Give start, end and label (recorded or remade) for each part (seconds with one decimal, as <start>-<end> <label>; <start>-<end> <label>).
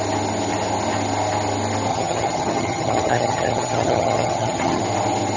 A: 0.0-1.9 recorded; 1.9-4.8 remade; 4.8-5.4 recorded